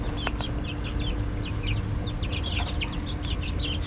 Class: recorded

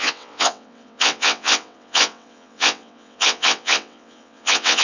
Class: remade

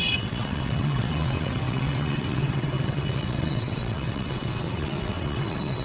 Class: remade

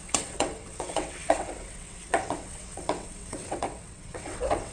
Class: remade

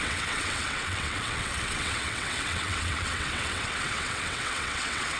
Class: remade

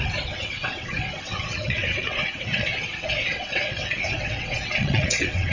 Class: remade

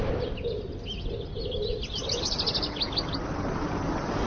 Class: recorded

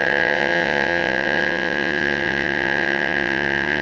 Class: remade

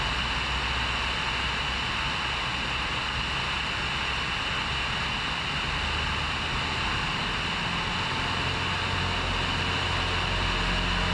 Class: recorded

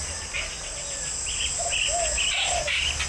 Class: recorded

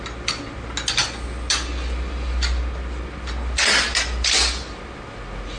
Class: recorded